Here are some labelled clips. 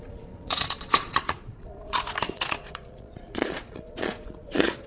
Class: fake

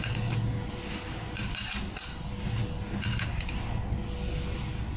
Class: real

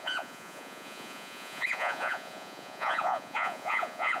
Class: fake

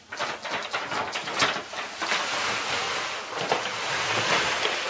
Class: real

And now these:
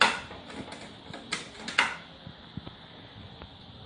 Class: real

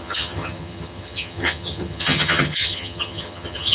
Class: fake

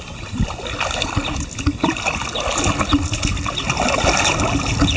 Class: real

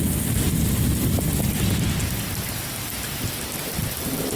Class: real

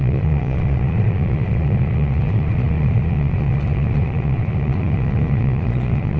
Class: fake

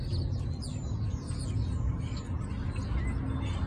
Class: real